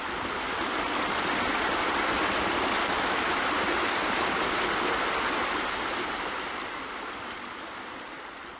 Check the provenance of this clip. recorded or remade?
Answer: recorded